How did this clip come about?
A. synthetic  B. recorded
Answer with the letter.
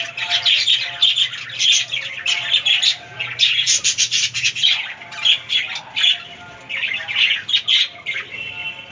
B